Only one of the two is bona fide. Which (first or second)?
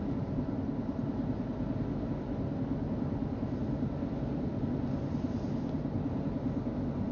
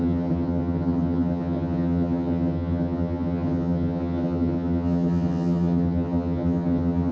first